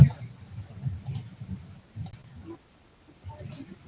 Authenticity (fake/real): real